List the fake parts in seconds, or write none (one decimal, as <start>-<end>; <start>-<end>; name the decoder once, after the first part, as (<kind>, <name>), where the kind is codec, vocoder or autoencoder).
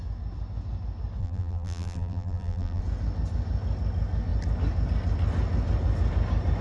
1.2-2.8 (vocoder, BigVGAN v2)